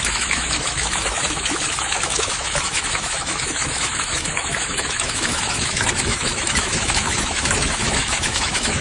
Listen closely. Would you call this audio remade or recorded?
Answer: remade